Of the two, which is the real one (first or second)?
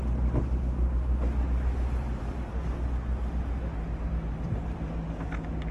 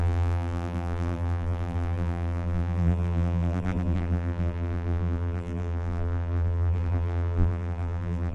first